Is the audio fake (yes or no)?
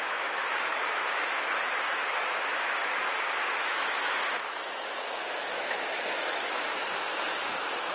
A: yes